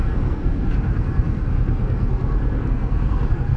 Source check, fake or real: fake